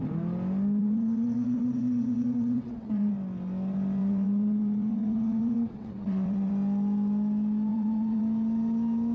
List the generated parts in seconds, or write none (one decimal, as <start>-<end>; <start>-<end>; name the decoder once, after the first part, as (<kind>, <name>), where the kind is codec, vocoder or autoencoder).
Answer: 0.8-3.1 (vocoder, WaveNeXt); 4.0-6.5; 7.7-8.2